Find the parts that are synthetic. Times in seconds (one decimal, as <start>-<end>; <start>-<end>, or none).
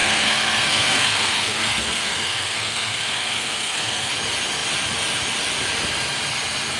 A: 0.0-4.1